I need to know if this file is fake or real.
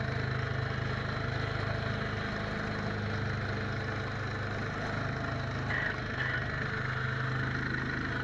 real